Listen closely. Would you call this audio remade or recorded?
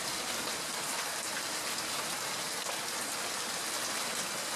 recorded